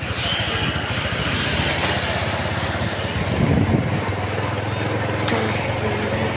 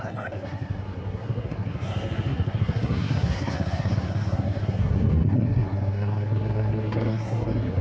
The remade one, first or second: second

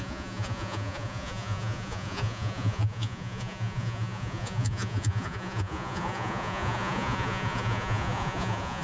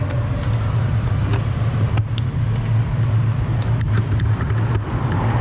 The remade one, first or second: first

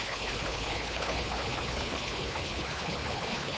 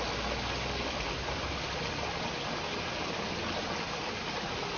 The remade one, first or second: first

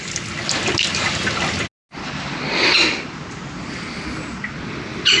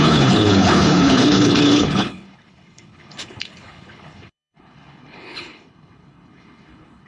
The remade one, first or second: second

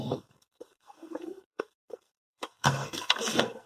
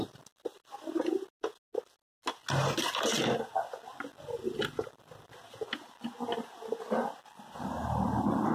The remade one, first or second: first